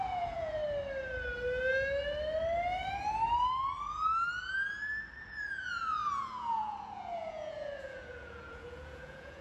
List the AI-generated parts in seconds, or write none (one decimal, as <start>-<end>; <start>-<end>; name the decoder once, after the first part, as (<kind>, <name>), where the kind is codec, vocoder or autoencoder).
0.0-0.6 (vocoder, Vocos); 5.2-9.4